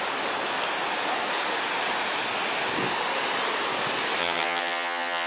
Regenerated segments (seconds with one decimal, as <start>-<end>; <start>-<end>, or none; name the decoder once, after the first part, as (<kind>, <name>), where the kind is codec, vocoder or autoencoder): 4.2-5.3 (vocoder, HiFi-GAN)